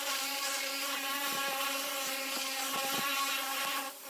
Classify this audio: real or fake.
real